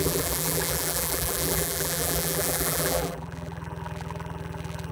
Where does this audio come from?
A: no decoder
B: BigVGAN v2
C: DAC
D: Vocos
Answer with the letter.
B